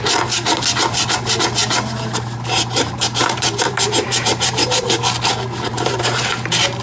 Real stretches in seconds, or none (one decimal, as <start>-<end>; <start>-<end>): 0.0-1.6; 4.8-5.7; 6.3-6.8